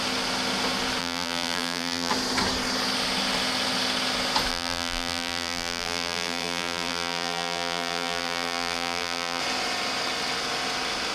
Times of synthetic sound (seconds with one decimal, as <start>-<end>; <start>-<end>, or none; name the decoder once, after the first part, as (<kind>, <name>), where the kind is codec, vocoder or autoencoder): 1.0-2.1 (vocoder, BigVGAN v2); 4.5-9.4